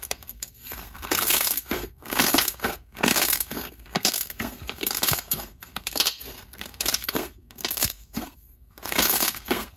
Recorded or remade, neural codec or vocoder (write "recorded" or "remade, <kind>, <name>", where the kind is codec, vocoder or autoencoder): remade, codec, SNAC